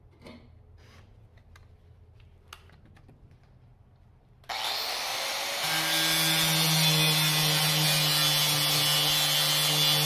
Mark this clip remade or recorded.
recorded